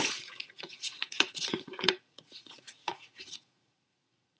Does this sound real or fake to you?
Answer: fake